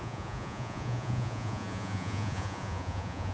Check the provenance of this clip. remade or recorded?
remade